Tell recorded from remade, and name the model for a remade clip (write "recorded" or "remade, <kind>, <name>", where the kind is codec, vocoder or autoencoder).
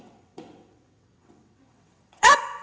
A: remade, vocoder, WaveNeXt